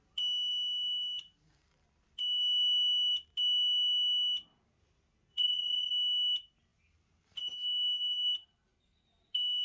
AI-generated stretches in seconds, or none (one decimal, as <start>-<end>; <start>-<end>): 5.3-5.9